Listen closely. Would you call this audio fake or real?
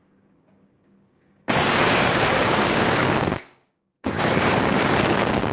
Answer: fake